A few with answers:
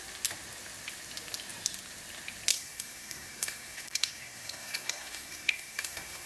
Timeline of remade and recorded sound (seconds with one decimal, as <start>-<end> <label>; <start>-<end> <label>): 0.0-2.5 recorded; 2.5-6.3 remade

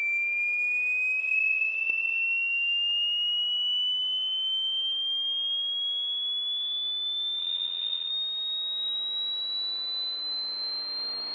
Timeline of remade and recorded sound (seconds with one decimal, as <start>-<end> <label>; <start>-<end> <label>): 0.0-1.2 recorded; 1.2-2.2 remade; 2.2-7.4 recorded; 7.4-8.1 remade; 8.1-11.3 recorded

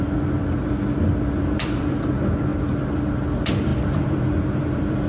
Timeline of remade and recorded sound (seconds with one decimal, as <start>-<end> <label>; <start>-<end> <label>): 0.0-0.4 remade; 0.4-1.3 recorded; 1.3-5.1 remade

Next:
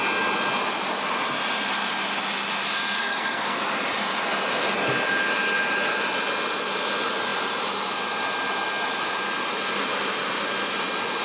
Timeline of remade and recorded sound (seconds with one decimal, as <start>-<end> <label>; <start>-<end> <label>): 0.0-3.0 recorded; 3.0-3.6 remade; 3.6-11.2 recorded

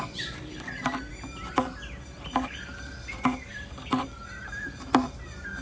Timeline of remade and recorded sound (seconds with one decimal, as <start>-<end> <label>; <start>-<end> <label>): 0.0-5.6 recorded

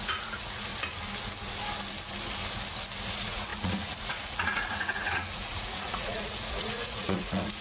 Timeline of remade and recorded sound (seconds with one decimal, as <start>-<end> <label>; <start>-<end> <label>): 0.0-0.7 remade; 0.7-3.1 recorded; 3.1-7.6 remade

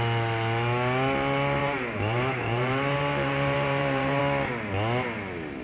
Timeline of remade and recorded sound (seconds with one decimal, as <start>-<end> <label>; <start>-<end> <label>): 0.0-1.6 recorded; 1.6-4.2 remade; 4.2-5.6 recorded

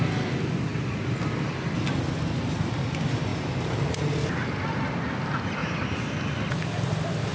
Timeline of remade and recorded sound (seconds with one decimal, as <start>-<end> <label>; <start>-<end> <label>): 0.0-3.3 recorded; 3.3-4.1 remade; 4.1-5.6 recorded; 5.6-6.1 remade; 6.1-7.3 recorded